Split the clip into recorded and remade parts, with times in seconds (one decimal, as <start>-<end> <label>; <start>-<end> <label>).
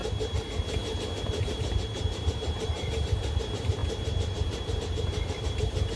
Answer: 0.0-1.4 recorded; 1.4-6.0 remade